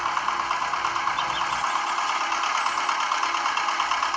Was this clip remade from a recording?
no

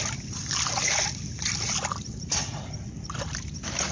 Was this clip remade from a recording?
no